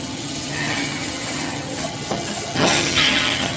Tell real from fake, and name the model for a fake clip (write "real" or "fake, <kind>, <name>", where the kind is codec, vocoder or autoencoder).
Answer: fake, vocoder, HiFi-GAN